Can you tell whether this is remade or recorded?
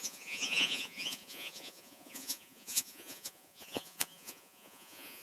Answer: remade